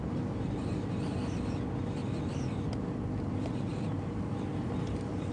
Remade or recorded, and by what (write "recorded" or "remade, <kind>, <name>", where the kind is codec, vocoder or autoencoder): recorded